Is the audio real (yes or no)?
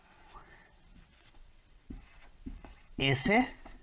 no